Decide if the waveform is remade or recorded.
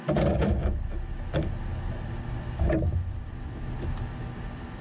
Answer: recorded